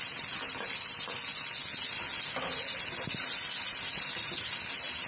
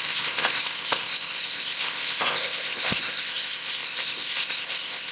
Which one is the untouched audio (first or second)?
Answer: first